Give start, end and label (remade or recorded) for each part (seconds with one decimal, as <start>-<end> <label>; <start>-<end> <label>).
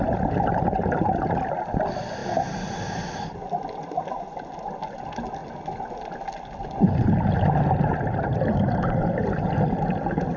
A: 0.0-10.4 recorded